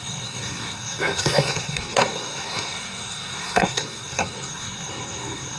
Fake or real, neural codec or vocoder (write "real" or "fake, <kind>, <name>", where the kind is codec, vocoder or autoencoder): fake, codec, SNAC